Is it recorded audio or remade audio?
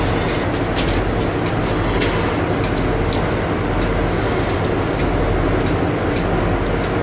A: recorded